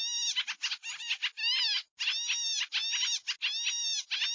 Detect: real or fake real